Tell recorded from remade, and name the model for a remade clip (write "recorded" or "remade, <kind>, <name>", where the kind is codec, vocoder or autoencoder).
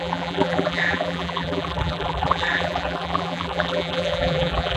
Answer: remade, vocoder, BigVGAN v2